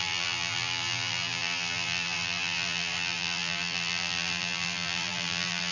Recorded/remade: remade